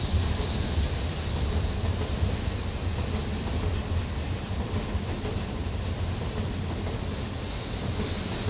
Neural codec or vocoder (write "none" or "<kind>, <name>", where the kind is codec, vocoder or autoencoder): none